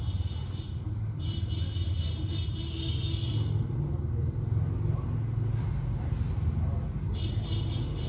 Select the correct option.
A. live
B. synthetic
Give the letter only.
A